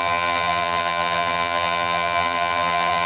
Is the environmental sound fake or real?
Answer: fake